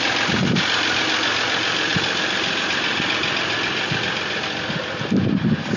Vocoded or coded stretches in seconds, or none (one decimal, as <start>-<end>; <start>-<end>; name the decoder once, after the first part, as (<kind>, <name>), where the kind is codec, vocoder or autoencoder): none